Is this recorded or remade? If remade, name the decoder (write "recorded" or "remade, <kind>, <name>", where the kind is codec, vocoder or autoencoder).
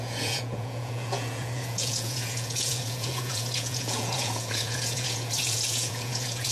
remade, vocoder, Vocos